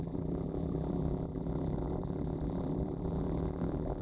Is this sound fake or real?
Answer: fake